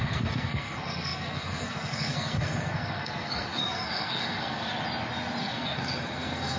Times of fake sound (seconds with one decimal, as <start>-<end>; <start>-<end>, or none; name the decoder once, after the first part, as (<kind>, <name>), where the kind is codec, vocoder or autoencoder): 0.0-4.7 (codec, SNAC); 5.4-6.6